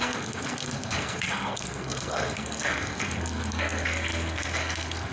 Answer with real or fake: fake